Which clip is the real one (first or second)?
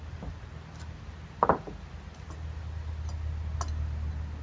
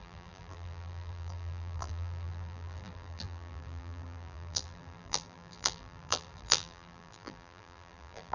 first